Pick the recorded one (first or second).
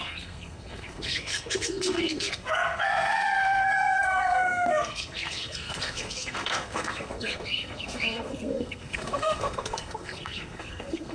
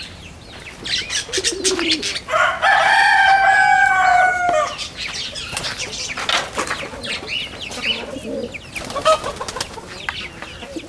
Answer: second